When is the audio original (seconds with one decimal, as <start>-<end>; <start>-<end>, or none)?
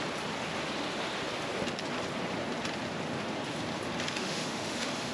0.0-4.2